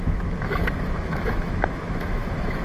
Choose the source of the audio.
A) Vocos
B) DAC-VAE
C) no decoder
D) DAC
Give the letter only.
B